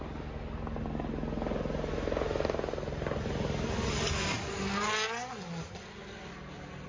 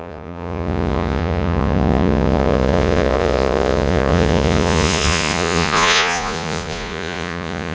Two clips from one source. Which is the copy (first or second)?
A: second